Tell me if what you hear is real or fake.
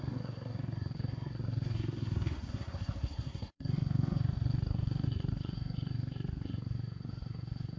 fake